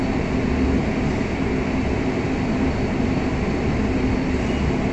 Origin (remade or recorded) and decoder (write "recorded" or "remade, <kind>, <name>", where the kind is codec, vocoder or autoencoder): recorded